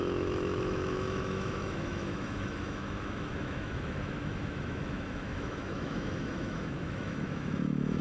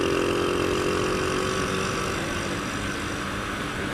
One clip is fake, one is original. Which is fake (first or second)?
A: first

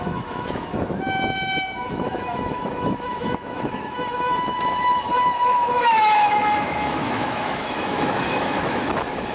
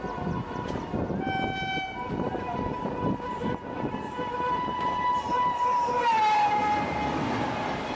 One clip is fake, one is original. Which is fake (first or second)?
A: first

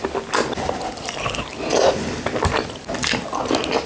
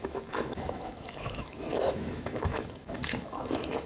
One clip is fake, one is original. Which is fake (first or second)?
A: second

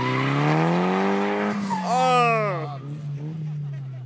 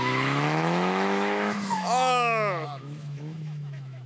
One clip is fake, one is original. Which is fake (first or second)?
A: second